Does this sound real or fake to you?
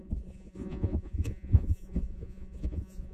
fake